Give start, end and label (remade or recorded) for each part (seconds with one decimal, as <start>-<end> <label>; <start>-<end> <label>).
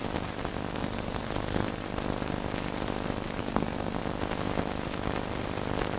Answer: 0.0-0.8 recorded; 0.8-1.7 remade; 1.7-3.4 recorded; 3.4-4.0 remade; 4.0-6.0 recorded